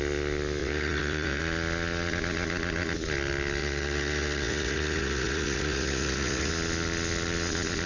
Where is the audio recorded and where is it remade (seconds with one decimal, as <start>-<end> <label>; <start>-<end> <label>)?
0.0-0.6 recorded; 0.6-1.4 remade; 1.4-3.6 recorded; 3.6-6.5 remade; 6.5-7.9 recorded